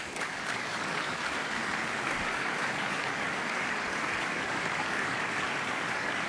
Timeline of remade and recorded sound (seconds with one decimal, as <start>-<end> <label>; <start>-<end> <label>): 0.0-6.3 remade